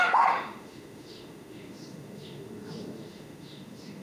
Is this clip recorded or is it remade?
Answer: remade